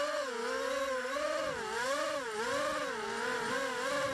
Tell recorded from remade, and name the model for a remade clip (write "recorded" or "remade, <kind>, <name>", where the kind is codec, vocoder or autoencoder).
recorded